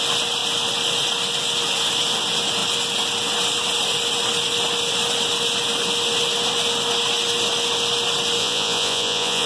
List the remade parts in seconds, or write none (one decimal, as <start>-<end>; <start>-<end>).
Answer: 8.4-9.5